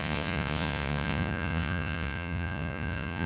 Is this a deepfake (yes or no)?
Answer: yes